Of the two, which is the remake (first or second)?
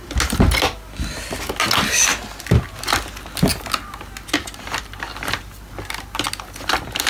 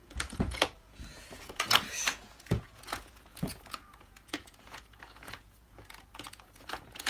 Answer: second